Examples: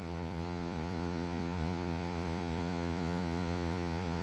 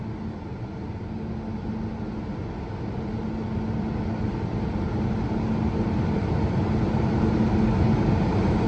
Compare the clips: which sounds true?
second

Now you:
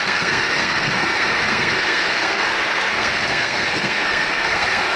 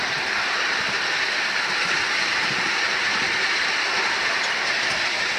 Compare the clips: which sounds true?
second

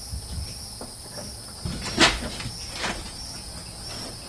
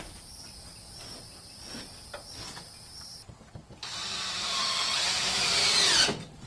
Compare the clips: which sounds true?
first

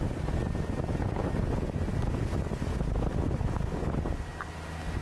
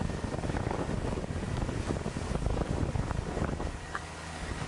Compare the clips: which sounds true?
first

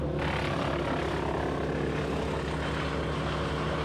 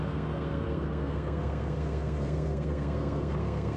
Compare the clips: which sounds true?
first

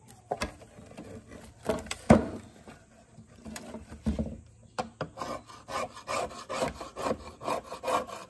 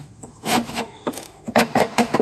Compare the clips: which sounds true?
first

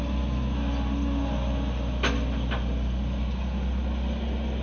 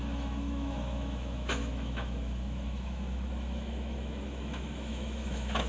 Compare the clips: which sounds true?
first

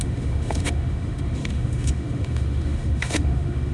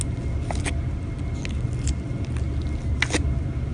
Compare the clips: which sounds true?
second